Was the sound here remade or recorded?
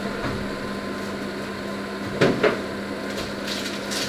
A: recorded